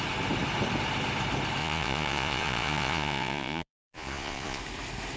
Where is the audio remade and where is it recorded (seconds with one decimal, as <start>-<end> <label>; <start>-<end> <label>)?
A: 0.0-1.6 recorded; 1.6-4.6 remade; 4.6-5.2 recorded